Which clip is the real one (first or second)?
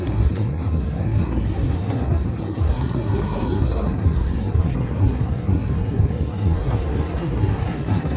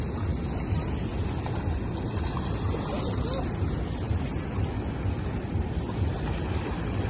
second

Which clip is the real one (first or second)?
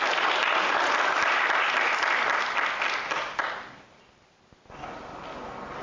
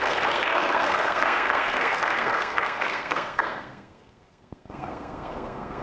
first